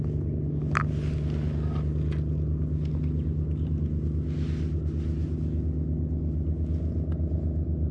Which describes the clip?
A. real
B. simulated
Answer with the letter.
A